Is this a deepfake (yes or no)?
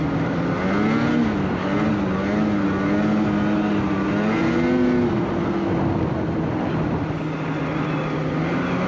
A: no